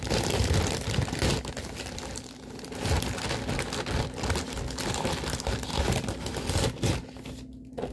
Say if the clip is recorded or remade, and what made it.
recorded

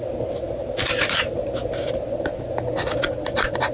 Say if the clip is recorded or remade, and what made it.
recorded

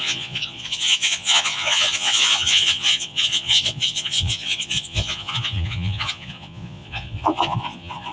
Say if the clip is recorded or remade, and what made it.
remade, vocoder, Vocos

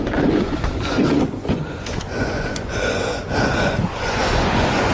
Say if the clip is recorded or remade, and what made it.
remade, vocoder, Vocos